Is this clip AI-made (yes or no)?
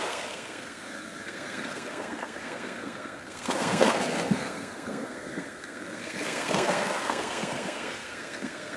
yes